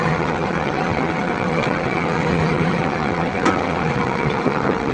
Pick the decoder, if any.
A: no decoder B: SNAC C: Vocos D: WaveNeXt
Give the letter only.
D